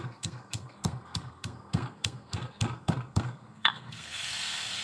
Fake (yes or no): yes